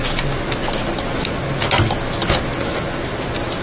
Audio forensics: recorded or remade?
recorded